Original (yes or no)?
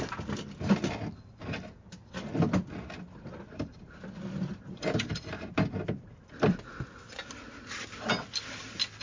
yes